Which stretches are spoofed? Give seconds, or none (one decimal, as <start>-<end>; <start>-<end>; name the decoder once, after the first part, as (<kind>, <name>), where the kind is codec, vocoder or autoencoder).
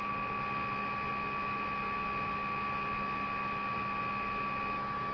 none